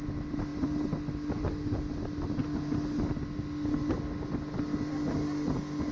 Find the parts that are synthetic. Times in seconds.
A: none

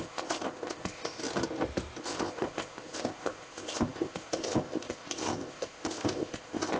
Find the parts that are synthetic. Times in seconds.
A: 0.0-1.2 (codec, ZipCodec); 2.0-6.8

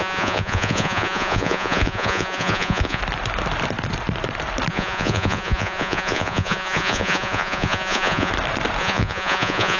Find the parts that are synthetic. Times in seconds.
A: 0.0-3.0 (vocoder, Vocos); 4.7-8.3; 8.8-9.8

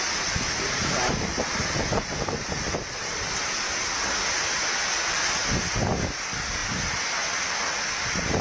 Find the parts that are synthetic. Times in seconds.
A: 0.8-4.2 (vocoder, BigVGAN v2)

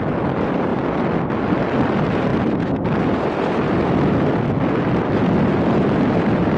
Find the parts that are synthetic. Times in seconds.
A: none

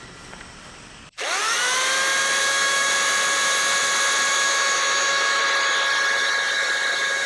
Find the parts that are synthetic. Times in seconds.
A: 2.4-2.9 (autoencoder, DAC-VAE); 4.3-5.4